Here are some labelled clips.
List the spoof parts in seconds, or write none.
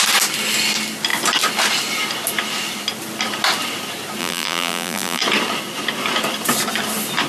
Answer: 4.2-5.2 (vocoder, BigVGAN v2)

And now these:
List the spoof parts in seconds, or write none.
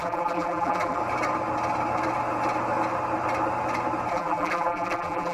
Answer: 0.0-1.0 (vocoder, BigVGAN v2); 4.1-5.3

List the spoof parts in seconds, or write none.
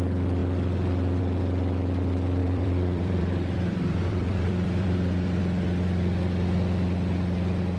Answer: 2.4-5.4 (vocoder, BigVGAN v2)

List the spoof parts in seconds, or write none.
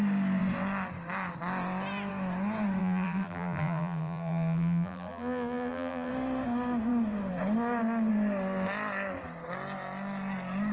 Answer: 2.8-6.1 (vocoder, BigVGAN v2)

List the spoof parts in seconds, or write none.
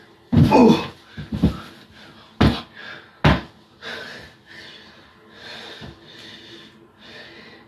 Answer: none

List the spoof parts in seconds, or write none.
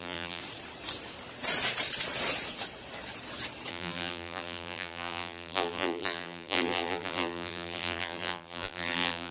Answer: 0.0-0.4 (vocoder, BigVGAN v2); 3.7-9.3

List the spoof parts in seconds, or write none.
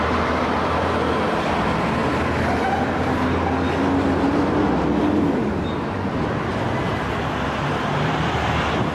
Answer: 0.0-2.0 (vocoder, BigVGAN v2); 5.2-6.5; 7.0-8.9